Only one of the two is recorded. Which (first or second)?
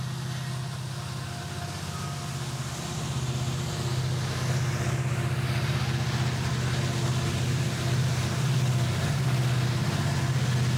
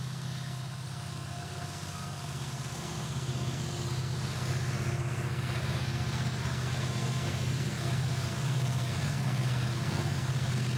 first